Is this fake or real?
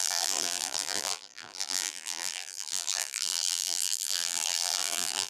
fake